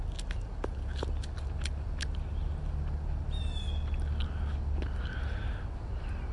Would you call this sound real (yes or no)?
yes